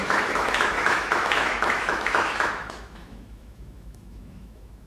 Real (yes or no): no